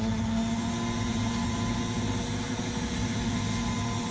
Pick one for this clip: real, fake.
real